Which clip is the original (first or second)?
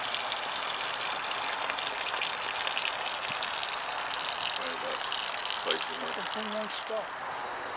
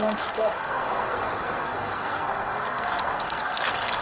first